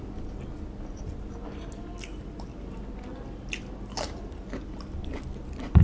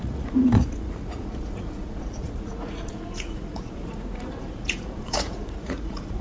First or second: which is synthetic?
second